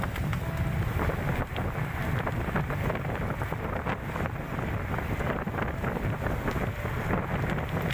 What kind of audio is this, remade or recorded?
recorded